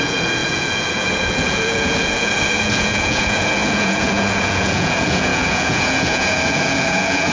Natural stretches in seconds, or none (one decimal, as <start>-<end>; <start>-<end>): none